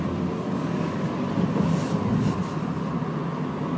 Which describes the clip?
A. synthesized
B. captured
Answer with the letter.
B